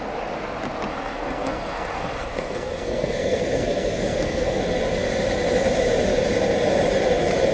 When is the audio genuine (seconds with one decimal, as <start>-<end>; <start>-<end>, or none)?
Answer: 0.0-0.9; 4.6-7.5